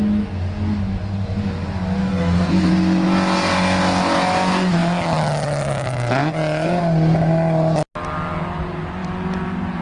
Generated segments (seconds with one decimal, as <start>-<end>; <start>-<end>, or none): 2.1-2.7